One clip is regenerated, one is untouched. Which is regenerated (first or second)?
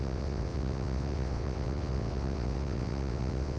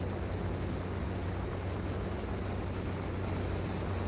first